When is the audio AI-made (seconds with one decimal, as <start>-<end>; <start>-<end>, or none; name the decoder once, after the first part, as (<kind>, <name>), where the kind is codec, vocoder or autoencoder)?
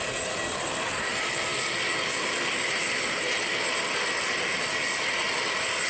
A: none